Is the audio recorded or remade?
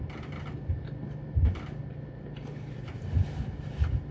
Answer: recorded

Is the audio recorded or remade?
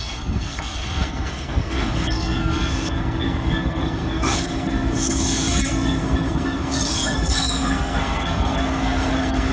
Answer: remade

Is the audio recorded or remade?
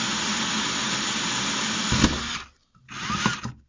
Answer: recorded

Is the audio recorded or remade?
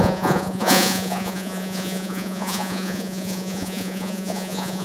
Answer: remade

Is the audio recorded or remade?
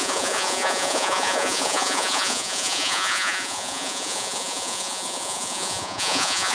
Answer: remade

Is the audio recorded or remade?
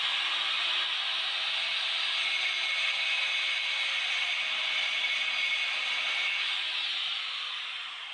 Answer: recorded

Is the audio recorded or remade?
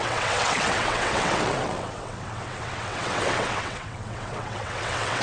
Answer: remade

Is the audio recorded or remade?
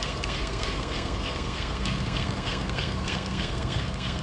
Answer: remade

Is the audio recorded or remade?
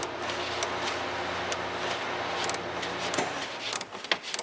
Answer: recorded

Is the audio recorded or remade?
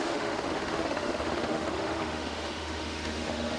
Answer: remade